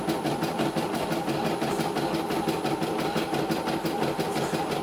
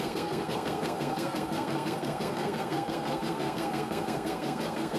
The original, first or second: first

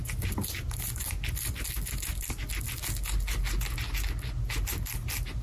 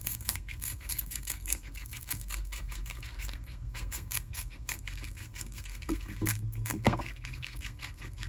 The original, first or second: first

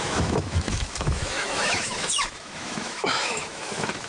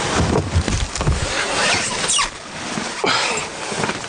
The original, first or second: second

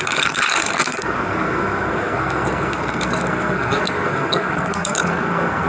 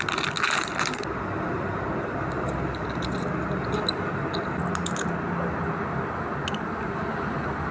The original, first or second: second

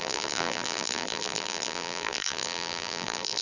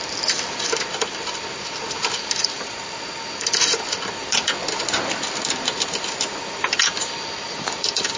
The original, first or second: second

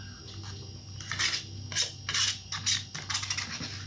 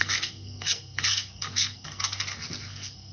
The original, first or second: first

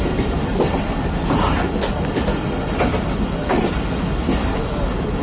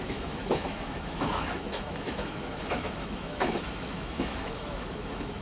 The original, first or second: first